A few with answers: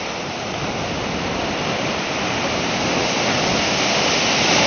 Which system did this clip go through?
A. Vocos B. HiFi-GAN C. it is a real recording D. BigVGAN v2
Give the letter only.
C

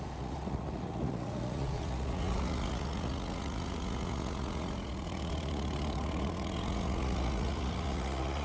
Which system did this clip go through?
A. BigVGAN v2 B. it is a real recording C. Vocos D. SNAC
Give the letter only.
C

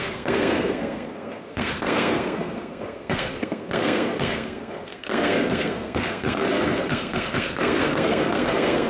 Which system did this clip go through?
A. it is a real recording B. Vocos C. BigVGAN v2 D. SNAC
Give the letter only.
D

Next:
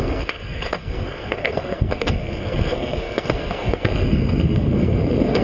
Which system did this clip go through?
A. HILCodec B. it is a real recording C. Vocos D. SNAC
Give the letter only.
D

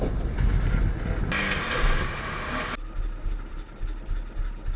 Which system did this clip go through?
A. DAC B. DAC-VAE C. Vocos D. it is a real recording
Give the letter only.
D